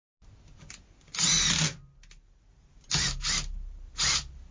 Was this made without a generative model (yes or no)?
yes